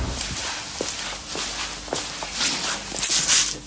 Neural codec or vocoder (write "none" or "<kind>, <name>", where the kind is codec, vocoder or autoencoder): none